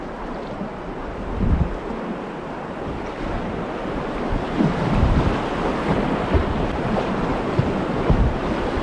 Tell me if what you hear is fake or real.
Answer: real